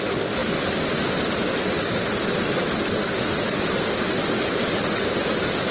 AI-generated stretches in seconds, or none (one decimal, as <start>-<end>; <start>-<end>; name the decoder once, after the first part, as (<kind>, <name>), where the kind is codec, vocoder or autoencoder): none